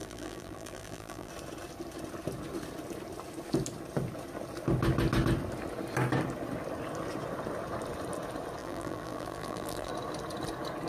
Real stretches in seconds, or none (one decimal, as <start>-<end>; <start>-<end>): 1.3-8.6; 9.9-10.9